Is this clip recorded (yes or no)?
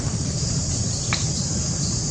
no